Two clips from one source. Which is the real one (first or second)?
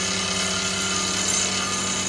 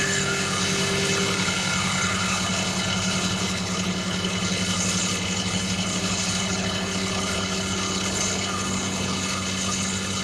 first